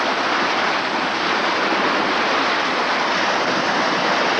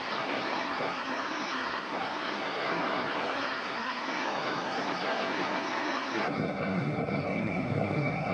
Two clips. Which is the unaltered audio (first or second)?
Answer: first